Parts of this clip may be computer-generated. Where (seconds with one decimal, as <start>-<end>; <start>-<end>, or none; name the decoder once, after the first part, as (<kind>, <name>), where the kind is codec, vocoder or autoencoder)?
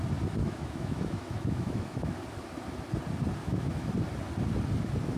0.4-2.1 (autoencoder, DAC-VAE); 3.4-3.9